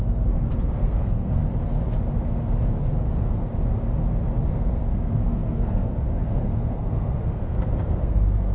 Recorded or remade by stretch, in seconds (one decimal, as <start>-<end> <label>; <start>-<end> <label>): 0.0-1.4 remade; 1.4-2.8 recorded; 2.8-3.5 remade; 3.5-4.5 recorded; 4.5-8.5 remade